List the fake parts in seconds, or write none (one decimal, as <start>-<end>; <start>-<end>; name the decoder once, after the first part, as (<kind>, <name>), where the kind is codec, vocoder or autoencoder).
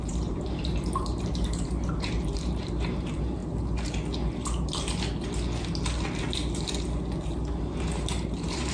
0.0-3.4 (vocoder, BigVGAN v2); 7.8-8.7